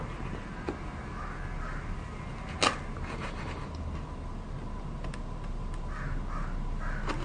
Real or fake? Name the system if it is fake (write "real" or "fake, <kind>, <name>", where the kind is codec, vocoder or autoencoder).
real